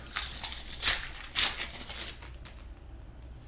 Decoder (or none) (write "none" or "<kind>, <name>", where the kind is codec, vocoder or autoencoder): none